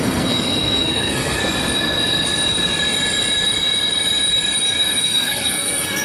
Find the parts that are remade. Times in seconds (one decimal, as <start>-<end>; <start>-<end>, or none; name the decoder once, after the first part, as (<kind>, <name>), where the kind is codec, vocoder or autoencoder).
0.0-1.4 (codec, SNAC); 5.0-6.0